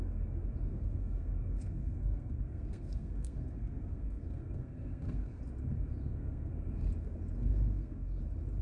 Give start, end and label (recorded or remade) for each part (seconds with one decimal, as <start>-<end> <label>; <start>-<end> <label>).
0.0-0.7 recorded; 0.7-5.4 remade; 5.4-6.0 recorded; 6.0-6.5 remade; 6.5-7.4 recorded; 7.4-8.2 remade; 8.2-8.6 recorded